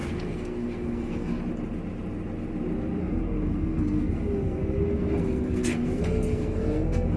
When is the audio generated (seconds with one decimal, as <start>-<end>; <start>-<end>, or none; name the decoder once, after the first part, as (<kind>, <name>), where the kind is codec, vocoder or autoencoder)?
0.0-1.4 (codec, SNAC); 3.0-7.2